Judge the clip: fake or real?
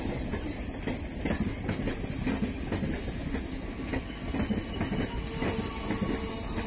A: real